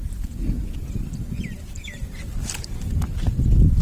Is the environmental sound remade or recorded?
recorded